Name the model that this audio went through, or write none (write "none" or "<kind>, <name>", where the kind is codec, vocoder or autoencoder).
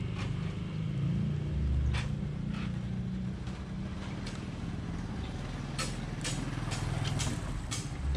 none